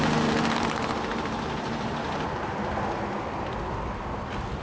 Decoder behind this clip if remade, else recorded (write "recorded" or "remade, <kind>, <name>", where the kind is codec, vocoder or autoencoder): recorded